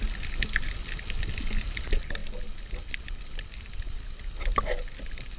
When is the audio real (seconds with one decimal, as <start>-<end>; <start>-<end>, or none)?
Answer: 0.0-5.4